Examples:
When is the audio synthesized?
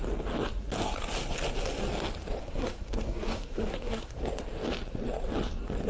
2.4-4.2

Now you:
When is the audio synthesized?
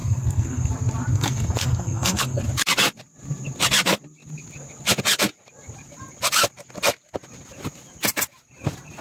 0.0-0.7; 1.1-2.4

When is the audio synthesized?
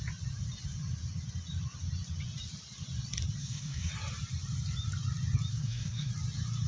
3.4-3.9; 5.5-6.1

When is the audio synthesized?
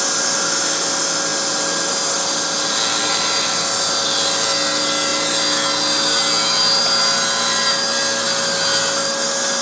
none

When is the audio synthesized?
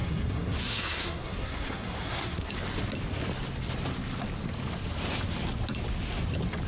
0.0-2.5